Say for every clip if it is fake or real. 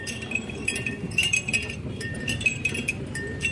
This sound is fake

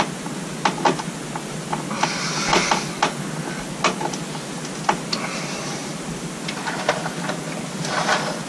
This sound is real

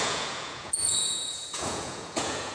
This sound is fake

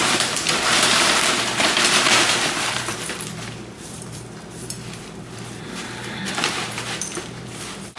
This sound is fake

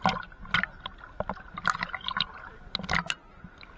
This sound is real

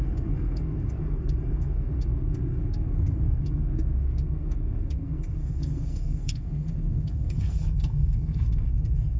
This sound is fake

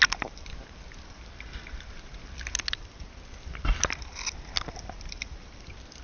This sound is real